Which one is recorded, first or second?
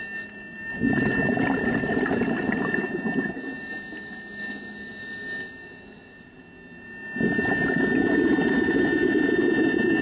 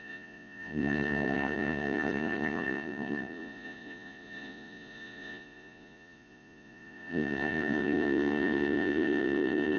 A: first